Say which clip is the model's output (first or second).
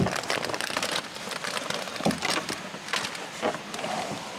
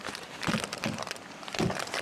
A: second